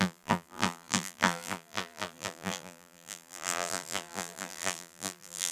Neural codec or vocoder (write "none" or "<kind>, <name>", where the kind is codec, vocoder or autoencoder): vocoder, BigVGAN v2